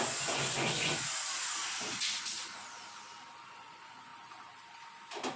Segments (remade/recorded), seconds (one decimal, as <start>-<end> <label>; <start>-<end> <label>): 0.0-0.9 remade; 0.9-3.5 recorded; 3.5-4.1 remade; 4.1-5.4 recorded